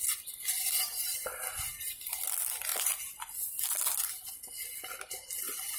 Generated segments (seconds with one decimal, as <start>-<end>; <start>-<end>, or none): none